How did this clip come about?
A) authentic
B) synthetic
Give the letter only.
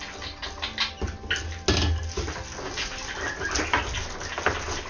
A